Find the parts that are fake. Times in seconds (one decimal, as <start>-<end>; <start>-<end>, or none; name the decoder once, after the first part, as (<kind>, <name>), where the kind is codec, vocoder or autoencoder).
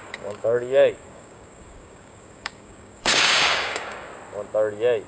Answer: 0.0-4.1 (codec, DAC)